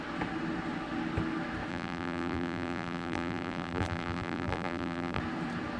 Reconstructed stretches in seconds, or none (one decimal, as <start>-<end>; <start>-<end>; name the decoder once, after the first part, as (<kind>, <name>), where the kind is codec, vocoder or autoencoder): 1.7-5.2 (vocoder, BigVGAN v2)

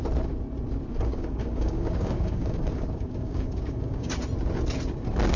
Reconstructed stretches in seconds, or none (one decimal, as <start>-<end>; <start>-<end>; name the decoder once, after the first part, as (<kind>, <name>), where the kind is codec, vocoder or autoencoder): 0.9-4.1 (codec, DAC)